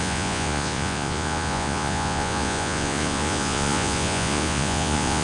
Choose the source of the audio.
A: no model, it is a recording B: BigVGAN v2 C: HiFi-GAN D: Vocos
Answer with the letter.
D